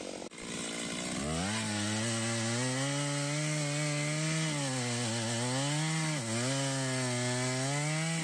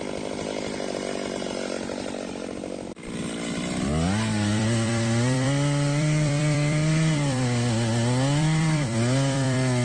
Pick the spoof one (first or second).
second